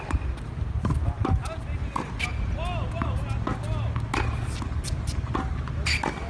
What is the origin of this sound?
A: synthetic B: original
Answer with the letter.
B